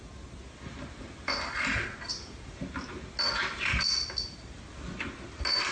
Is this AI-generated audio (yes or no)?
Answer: no